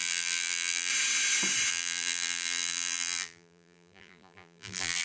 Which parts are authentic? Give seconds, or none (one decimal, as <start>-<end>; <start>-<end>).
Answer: 0.9-1.7